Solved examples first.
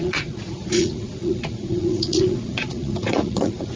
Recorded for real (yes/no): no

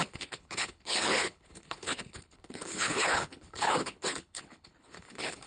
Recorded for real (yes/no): no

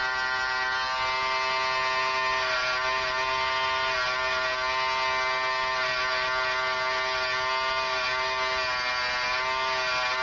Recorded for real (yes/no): yes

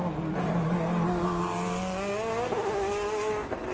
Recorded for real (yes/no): yes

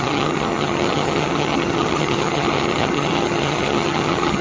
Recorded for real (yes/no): no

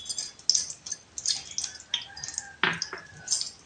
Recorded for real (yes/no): yes